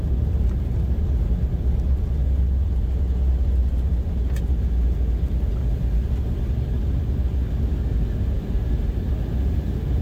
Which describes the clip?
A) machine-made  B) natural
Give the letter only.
B